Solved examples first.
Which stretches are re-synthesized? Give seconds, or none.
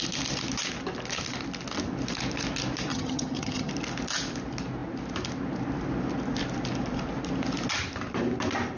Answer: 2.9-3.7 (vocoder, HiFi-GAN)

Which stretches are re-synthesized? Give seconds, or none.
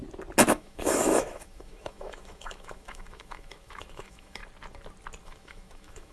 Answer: 0.5-4.4 (autoencoder, DAC-VAE); 5.2-6.1